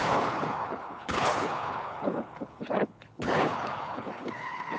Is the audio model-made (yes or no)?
yes